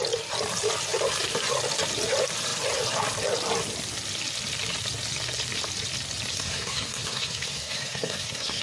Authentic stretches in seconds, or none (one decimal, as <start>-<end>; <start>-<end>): 0.0-6.3